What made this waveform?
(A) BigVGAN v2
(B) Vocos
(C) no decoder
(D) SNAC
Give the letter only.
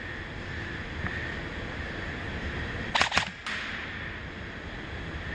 C